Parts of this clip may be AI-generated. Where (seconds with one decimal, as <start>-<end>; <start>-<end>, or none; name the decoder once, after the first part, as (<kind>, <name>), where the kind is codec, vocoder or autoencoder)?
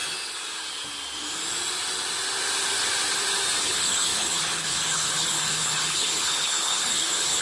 3.6-7.4 (codec, HILCodec)